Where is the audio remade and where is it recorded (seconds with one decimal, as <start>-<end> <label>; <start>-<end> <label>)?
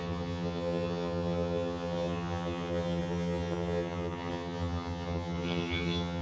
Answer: 0.0-6.2 remade